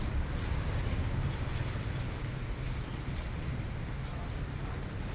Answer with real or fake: real